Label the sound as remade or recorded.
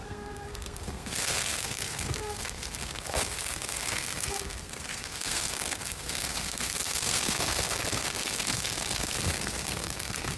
remade